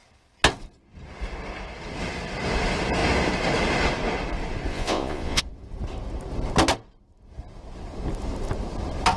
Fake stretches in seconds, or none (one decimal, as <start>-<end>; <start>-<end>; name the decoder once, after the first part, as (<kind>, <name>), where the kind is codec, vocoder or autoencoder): 4.7-5.4 (vocoder, Vocos)